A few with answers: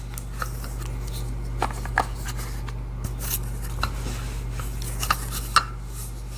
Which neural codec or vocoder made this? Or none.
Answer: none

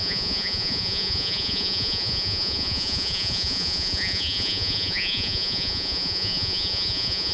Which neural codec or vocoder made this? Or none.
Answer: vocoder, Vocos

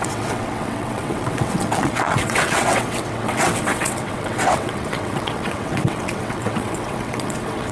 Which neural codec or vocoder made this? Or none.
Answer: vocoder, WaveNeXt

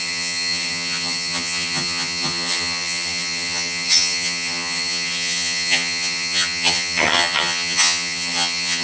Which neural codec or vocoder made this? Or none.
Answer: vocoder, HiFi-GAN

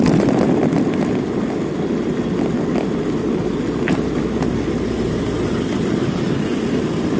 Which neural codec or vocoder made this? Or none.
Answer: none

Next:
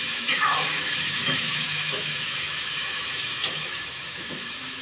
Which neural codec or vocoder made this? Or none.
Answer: autoencoder, DAC-VAE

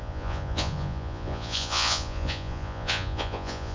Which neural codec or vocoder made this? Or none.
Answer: vocoder, Vocos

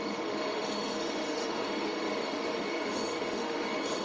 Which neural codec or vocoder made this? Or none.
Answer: autoencoder, DAC-VAE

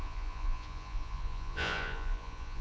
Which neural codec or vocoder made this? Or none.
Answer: vocoder, Vocos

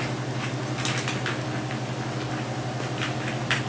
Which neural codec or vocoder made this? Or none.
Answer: none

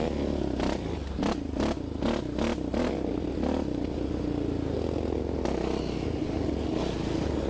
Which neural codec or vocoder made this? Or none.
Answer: none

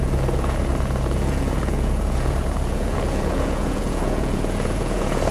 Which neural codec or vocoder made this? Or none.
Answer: vocoder, Vocos